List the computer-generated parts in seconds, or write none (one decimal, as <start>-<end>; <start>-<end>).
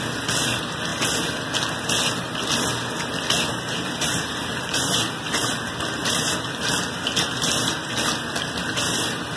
3.5-5.5; 6.0-7.9